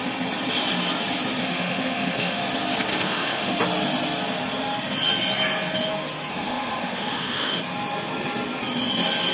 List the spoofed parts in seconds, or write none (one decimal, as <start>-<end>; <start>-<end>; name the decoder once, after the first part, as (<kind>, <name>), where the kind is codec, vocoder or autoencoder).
1.4-2.4 (autoencoder, DAC-VAE); 2.9-3.6; 6.3-7.6